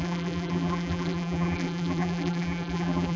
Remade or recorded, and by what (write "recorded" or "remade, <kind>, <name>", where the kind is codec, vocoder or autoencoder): remade, vocoder, BigVGAN v2